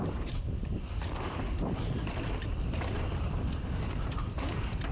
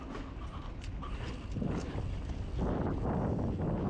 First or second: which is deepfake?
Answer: first